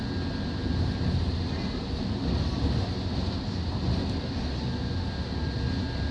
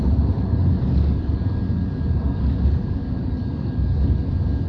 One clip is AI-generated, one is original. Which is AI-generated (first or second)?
second